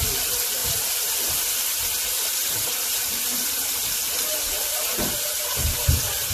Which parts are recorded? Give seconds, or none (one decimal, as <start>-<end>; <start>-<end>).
0.0-0.6; 1.2-6.3